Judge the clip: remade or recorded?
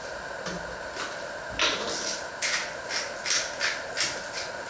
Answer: recorded